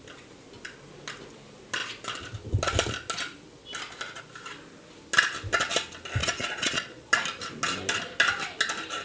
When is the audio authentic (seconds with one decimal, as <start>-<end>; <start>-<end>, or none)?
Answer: 0.0-6.2; 7.1-9.0